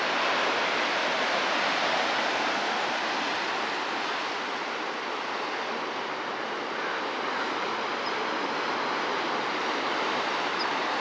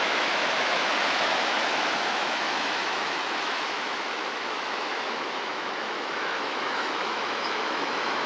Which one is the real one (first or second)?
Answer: first